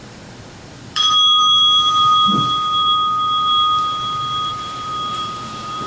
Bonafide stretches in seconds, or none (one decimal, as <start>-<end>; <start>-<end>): 1.6-4.5